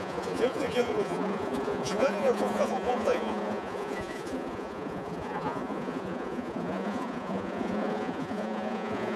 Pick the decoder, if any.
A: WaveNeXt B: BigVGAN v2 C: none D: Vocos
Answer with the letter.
D